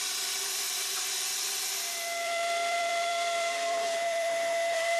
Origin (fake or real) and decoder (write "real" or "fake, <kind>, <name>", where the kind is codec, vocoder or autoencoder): fake, vocoder, BigVGAN v2